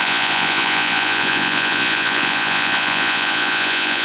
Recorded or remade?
remade